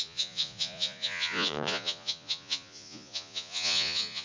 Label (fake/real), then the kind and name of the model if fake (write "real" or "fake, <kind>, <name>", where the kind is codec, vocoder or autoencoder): fake, vocoder, Vocos